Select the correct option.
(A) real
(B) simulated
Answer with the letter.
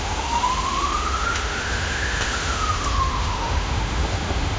B